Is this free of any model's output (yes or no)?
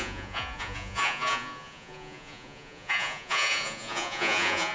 no